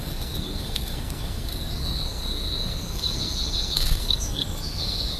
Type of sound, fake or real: fake